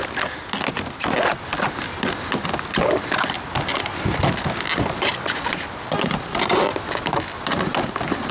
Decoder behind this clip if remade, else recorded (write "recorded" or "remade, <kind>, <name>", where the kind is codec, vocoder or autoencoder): recorded